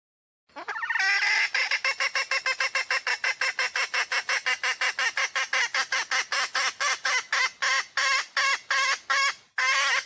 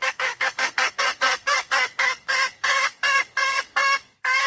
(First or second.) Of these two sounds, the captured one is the first